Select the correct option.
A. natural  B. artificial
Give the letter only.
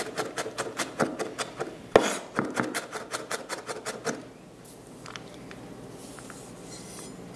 A